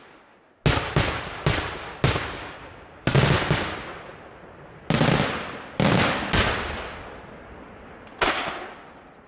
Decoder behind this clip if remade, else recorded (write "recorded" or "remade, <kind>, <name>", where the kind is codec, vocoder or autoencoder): recorded